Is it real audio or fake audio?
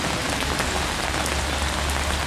real